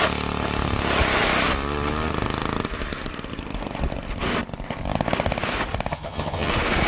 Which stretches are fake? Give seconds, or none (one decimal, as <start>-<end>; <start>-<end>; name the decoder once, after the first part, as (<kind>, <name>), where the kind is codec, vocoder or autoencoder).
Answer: 5.9-6.5 (vocoder, HiFi-GAN)

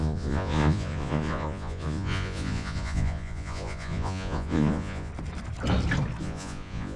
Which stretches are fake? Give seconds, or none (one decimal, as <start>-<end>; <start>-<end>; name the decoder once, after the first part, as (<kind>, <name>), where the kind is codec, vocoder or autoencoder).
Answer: 0.0-5.1 (vocoder, Vocos); 6.2-7.0

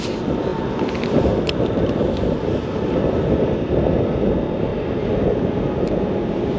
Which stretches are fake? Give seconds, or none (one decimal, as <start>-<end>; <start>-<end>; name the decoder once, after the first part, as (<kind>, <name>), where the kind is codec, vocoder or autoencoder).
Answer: none

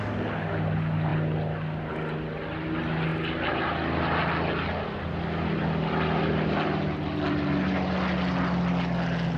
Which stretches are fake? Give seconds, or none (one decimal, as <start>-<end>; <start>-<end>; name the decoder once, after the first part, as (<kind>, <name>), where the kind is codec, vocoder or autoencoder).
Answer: none

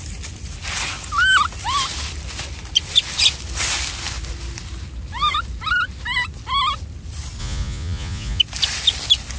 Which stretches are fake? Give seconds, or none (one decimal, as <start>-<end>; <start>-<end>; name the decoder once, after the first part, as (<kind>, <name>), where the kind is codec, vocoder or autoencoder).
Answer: 7.4-8.4 (vocoder, Vocos)

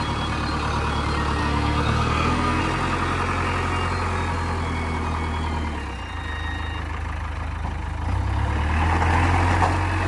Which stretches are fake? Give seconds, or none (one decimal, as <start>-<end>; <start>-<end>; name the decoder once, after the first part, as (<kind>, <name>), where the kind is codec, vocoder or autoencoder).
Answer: 1.4-2.6 (codec, SNAC)

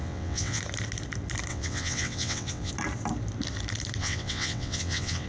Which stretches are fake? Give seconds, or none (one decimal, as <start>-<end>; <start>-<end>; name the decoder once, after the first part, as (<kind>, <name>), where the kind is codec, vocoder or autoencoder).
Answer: 0.0-0.6 (vocoder, WaveNeXt); 1.5-2.7; 4.0-5.3

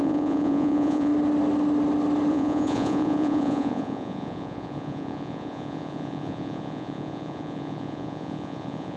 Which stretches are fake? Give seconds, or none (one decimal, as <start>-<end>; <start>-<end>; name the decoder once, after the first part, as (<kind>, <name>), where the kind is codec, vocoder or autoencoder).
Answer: 0.0-1.1 (vocoder, Vocos); 2.3-9.0